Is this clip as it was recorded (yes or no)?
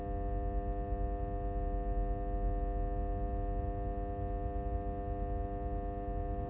yes